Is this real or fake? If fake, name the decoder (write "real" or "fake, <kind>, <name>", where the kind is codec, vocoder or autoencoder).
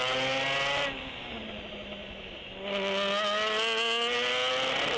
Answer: real